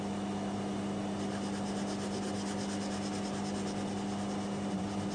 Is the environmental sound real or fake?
real